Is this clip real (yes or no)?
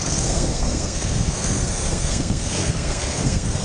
no